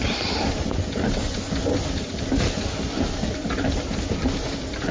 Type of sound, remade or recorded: recorded